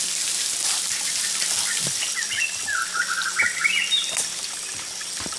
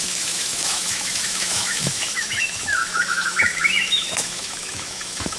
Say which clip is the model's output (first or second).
second